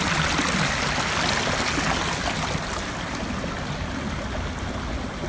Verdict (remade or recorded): recorded